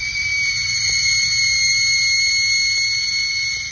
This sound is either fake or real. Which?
real